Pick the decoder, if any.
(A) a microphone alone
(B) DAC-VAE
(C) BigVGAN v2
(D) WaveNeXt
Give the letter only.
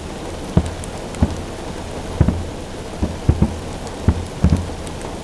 A